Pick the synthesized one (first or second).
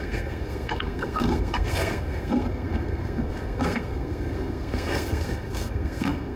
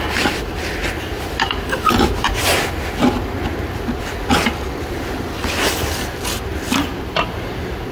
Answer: first